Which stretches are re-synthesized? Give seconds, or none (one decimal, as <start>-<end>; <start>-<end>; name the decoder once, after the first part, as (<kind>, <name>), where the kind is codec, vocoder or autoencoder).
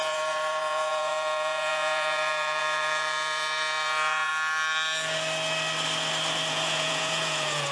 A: 0.0-4.3 (vocoder, Vocos); 6.5-7.7